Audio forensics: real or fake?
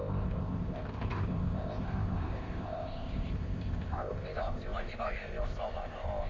fake